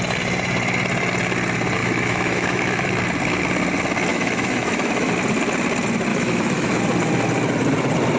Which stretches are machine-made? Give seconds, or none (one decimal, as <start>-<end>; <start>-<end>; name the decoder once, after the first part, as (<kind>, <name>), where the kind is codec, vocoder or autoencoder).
1.8-2.9 (autoencoder, DAC-VAE); 4.1-5.1; 6.1-6.8